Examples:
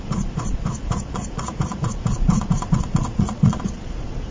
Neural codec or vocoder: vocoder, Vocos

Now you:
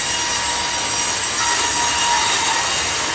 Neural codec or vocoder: none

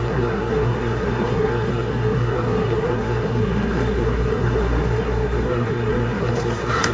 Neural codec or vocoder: codec, SNAC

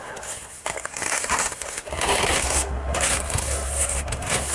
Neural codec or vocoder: codec, SNAC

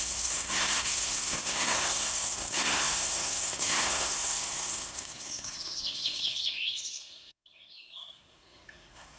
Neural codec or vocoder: codec, SNAC